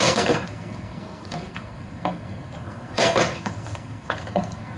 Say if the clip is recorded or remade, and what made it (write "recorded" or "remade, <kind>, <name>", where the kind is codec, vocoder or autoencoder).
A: remade, codec, SNAC